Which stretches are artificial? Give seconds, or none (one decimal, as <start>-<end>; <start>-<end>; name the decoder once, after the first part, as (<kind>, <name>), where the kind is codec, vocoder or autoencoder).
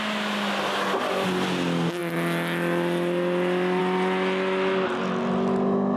none